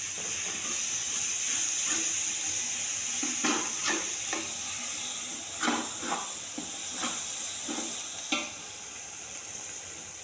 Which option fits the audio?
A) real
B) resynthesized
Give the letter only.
A